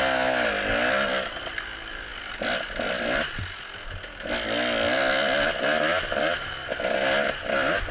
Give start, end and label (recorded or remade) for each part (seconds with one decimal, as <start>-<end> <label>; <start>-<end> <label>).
0.0-7.9 recorded